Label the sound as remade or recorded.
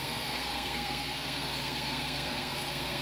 remade